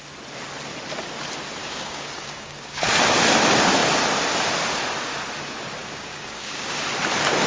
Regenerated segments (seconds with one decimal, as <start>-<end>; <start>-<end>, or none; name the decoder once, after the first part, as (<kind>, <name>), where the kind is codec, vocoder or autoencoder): 1.6-2.9 (codec, DAC); 5.8-6.8